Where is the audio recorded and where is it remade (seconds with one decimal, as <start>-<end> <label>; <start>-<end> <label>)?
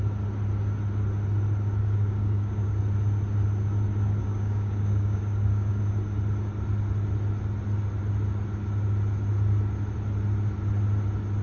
0.0-1.8 recorded; 1.8-2.8 remade; 2.8-4.3 recorded; 4.3-5.8 remade; 5.8-11.4 recorded